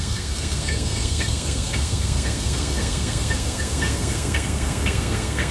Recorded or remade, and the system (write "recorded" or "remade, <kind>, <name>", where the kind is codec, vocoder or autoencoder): remade, codec, SNAC